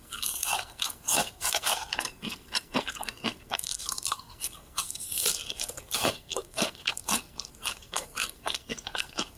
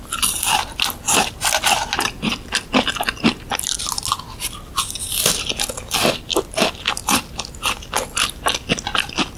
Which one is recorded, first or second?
second